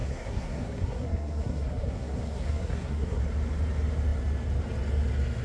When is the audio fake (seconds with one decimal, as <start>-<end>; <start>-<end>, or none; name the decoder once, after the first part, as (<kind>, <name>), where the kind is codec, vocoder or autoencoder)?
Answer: 0.0-3.2 (codec, SNAC)